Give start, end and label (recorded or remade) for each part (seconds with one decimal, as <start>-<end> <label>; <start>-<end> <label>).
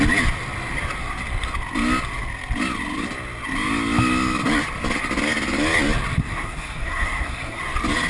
0.0-6.2 recorded; 6.2-7.6 remade; 7.6-8.1 recorded